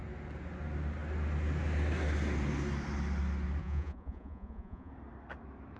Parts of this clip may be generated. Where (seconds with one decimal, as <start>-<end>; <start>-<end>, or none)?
3.6-4.9